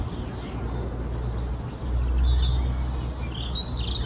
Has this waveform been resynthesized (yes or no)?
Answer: no